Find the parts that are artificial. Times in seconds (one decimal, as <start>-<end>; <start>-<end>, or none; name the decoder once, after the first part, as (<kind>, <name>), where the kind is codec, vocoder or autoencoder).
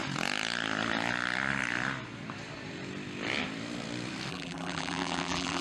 4.3-5.6 (vocoder, BigVGAN v2)